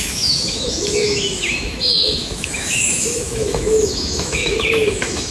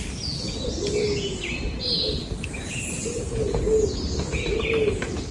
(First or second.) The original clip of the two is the second